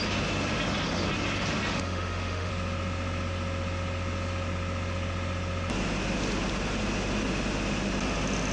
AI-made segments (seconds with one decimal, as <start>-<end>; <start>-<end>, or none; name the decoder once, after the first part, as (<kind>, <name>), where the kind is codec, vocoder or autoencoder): 1.7-2.5 (autoencoder, DAC-VAE)

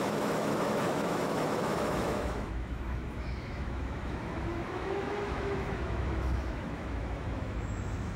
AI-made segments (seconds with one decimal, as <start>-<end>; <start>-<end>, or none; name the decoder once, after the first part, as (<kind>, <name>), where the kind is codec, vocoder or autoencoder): 0.0-8.2 (autoencoder, DAC-VAE)

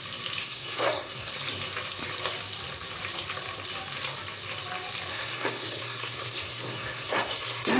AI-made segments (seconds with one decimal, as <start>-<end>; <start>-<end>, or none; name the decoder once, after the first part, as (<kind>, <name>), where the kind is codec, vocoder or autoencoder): 0.4-1.3 (codec, SNAC); 5.1-7.8

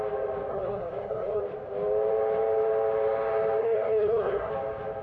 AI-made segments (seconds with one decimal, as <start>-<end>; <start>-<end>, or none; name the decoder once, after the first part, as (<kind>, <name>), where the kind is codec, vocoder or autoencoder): 0.5-1.4 (codec, SNAC); 3.6-4.5

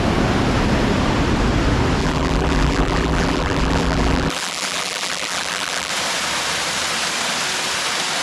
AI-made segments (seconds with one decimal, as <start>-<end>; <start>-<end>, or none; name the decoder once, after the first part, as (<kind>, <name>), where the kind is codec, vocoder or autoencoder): 2.0-5.9 (vocoder, BigVGAN v2)

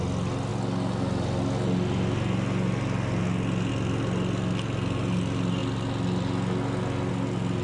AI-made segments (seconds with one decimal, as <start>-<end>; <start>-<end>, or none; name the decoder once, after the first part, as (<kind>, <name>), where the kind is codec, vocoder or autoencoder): none

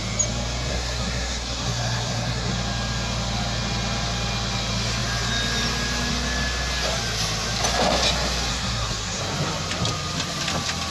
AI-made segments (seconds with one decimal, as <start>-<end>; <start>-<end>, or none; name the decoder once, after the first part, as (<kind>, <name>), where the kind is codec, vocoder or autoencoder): 0.7-2.5 (codec, SNAC); 8.5-9.2